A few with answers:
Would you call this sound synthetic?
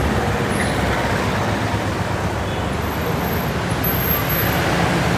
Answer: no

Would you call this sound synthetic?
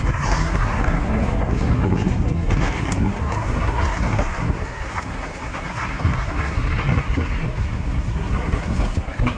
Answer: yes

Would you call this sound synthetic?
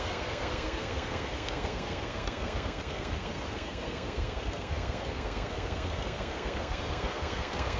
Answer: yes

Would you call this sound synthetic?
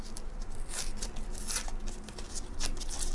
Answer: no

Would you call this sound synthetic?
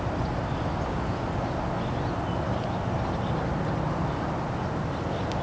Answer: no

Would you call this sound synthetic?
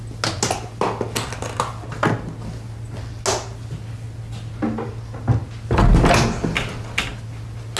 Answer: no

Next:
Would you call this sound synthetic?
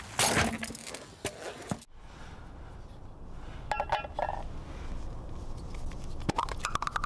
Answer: no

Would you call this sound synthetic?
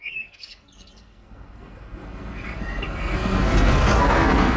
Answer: yes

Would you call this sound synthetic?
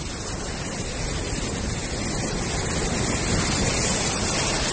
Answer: no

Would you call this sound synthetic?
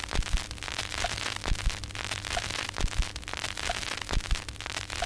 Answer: no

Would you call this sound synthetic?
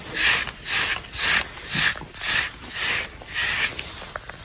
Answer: no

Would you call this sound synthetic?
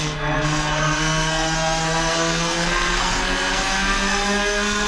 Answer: yes